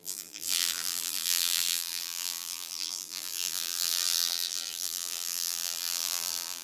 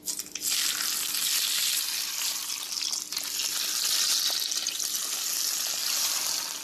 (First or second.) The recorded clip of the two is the second